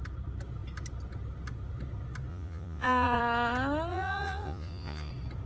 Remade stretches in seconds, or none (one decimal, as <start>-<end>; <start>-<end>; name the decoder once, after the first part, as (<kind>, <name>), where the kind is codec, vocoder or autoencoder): 2.3-3.2 (vocoder, Vocos); 3.9-5.1